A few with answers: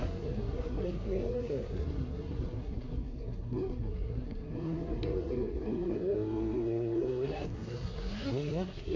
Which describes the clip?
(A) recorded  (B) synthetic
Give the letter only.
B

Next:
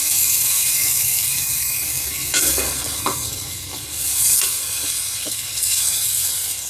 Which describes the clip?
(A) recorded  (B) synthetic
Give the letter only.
B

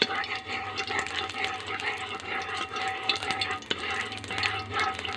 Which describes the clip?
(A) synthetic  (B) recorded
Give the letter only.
B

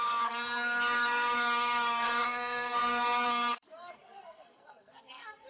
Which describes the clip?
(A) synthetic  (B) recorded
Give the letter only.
A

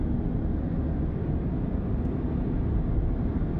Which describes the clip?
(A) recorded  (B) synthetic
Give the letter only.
A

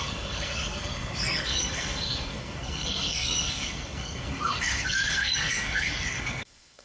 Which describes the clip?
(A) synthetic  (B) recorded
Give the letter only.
A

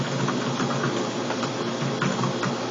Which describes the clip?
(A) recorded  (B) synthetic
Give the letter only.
A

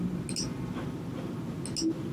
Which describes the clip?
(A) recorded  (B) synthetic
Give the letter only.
A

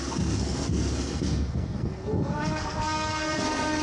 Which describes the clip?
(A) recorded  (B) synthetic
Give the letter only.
B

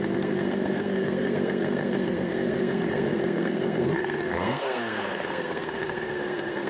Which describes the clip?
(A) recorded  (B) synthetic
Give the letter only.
B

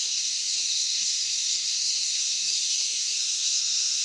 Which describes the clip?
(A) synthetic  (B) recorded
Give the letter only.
A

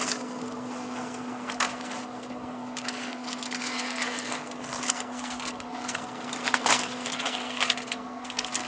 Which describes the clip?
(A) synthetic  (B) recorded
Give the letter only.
A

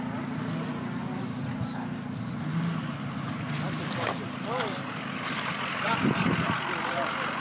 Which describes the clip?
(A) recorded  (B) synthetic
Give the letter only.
A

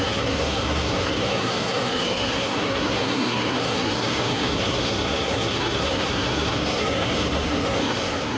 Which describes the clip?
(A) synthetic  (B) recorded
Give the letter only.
A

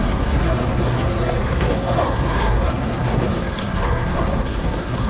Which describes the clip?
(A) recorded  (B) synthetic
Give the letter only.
B